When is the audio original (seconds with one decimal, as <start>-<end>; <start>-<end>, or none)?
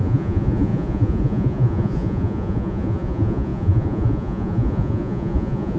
none